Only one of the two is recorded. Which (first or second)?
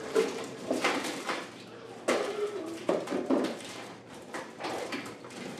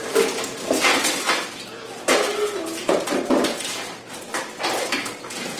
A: second